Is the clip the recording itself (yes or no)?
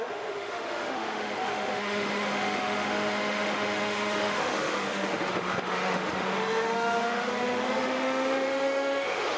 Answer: no